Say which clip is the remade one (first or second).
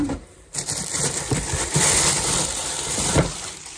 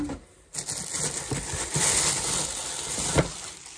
first